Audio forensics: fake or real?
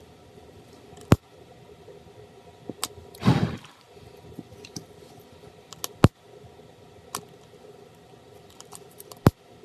real